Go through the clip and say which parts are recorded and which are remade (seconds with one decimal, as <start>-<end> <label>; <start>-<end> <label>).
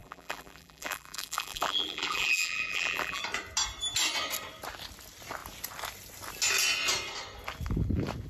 0.0-3.2 remade; 3.2-8.3 recorded